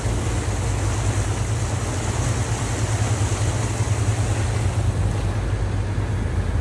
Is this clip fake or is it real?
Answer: real